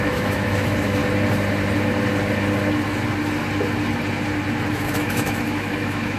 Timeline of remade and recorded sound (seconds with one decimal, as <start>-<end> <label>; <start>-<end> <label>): 0.0-1.0 remade; 1.0-4.7 recorded; 4.7-6.2 remade